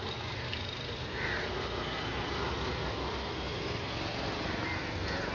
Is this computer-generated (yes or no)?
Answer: no